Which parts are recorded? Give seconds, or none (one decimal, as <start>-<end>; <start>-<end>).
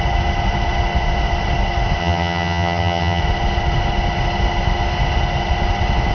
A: 0.0-2.0; 3.2-6.1